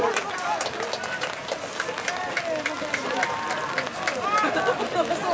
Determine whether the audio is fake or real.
real